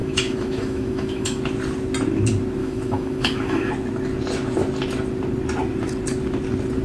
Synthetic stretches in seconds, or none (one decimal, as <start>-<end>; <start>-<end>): 0.0-1.4; 2.6-3.7

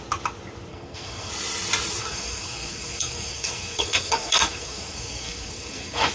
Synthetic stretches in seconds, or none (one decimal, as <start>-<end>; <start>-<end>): 0.7-1.3; 2.0-6.1